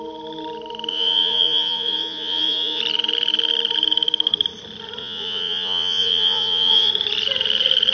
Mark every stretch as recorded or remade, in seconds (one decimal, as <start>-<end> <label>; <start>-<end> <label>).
0.0-0.9 recorded; 0.9-2.8 remade; 2.8-5.0 recorded; 5.0-6.9 remade; 6.9-7.9 recorded